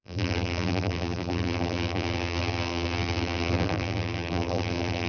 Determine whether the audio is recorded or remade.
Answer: remade